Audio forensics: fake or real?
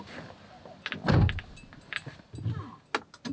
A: real